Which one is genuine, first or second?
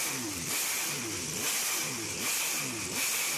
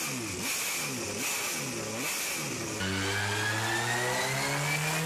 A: second